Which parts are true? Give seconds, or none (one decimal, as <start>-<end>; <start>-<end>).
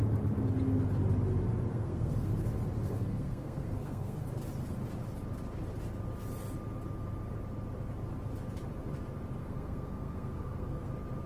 0.0-1.7; 2.3-3.0; 4.3-9.4; 10.9-11.3